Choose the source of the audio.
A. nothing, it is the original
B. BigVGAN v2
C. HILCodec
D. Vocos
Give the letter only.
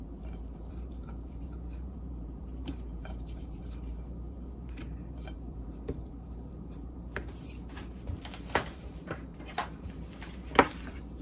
B